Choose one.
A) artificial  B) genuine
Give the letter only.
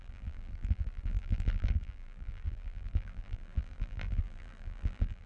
A